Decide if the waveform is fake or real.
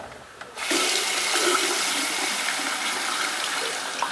real